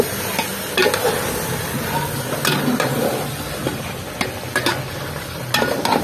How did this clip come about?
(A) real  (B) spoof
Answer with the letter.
A